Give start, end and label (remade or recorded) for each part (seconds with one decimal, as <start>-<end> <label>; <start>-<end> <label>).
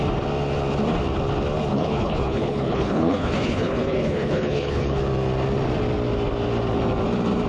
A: 0.0-1.7 recorded; 1.7-5.0 remade; 5.0-7.5 recorded